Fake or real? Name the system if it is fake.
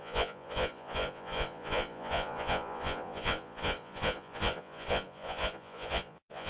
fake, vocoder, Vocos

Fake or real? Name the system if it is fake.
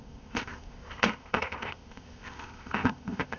fake, codec, ZipCodec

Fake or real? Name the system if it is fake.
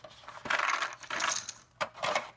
real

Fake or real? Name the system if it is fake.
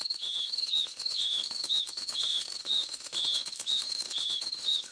fake, autoencoder, DAC-VAE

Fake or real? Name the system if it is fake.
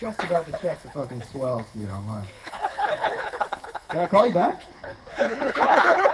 fake, codec, HILCodec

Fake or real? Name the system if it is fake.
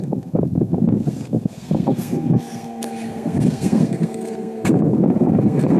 fake, codec, SNAC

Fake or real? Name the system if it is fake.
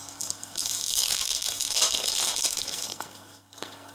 fake, codec, SNAC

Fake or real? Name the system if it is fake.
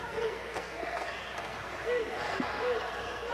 fake, codec, SNAC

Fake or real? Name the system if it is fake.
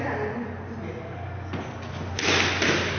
real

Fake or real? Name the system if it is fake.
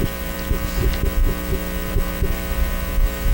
real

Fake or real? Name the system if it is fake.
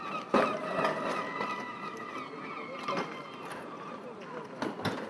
real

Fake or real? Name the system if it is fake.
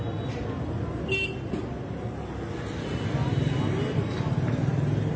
real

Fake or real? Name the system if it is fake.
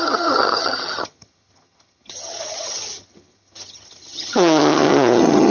fake, vocoder, HiFi-GAN